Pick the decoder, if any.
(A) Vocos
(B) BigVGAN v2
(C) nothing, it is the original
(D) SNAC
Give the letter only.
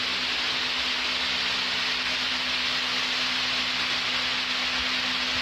C